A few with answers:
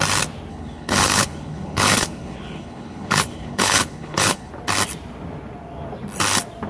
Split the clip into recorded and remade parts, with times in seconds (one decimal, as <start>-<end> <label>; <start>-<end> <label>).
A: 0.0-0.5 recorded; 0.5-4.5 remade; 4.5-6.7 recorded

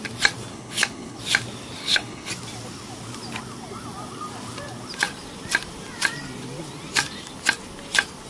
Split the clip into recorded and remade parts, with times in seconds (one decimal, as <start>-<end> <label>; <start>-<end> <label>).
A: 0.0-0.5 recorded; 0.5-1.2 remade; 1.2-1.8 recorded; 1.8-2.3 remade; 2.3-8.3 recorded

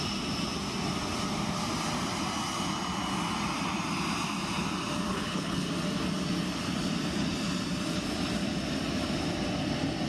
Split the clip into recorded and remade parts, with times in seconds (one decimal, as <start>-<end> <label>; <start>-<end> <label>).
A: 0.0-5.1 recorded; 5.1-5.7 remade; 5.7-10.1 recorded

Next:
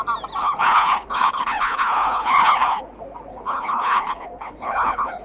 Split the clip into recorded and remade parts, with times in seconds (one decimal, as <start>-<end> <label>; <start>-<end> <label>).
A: 0.0-0.4 recorded; 0.4-2.8 remade; 2.8-3.3 recorded; 3.3-5.2 remade